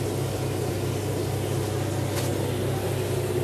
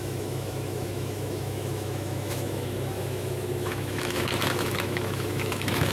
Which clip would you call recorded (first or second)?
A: first